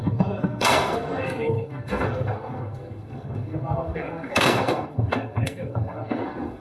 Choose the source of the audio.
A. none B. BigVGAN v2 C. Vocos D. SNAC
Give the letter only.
D